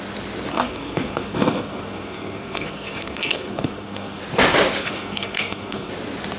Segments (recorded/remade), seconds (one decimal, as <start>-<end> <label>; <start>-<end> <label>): 0.0-0.5 recorded; 0.5-4.2 remade; 4.2-4.8 recorded; 4.8-5.9 remade; 5.9-6.4 recorded